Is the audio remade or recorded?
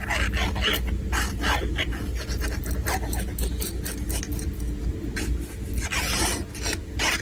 recorded